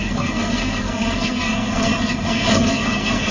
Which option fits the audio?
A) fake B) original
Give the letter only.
A